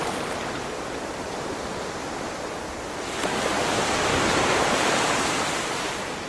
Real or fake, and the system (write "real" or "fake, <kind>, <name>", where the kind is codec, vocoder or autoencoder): real